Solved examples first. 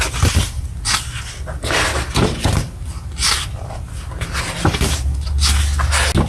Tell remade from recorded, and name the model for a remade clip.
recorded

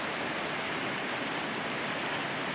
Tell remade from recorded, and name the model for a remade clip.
recorded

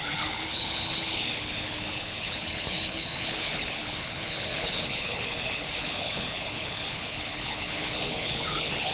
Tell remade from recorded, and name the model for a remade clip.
remade, codec, HILCodec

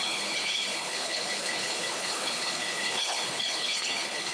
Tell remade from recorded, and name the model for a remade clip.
remade, codec, HILCodec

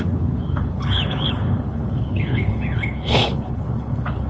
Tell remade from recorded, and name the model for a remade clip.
remade, codec, HILCodec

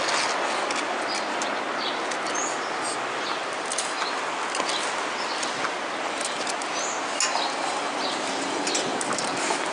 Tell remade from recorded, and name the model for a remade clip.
recorded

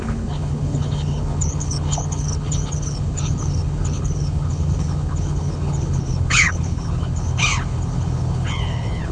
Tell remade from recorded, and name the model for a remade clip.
remade, codec, HILCodec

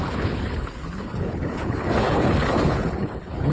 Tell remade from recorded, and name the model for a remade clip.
remade, codec, HILCodec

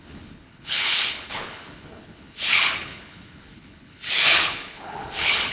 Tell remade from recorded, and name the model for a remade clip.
remade, codec, HILCodec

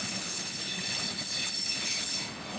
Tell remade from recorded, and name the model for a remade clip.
remade, codec, HILCodec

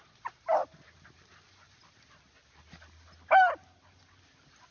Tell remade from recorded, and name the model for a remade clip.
recorded